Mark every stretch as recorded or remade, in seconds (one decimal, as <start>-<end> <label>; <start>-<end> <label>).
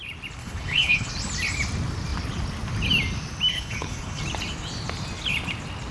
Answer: 0.0-0.4 recorded; 0.4-1.1 remade; 1.1-3.5 recorded; 3.5-4.2 remade; 4.2-5.9 recorded